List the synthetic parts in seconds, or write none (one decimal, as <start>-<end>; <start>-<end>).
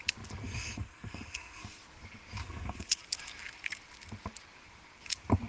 0.4-1.8; 2.4-3.0